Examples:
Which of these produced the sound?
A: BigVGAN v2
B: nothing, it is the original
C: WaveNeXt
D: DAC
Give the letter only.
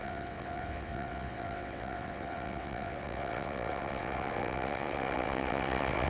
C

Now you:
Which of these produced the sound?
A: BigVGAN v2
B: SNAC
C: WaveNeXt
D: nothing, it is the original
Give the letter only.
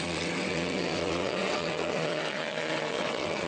C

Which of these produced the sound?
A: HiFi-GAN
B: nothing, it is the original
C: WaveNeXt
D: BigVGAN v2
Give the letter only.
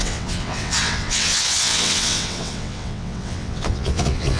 C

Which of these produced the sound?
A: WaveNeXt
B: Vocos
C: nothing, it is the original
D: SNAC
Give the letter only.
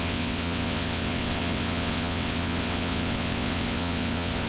A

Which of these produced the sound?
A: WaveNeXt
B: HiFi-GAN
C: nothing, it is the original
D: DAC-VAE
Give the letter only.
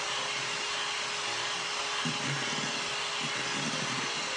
C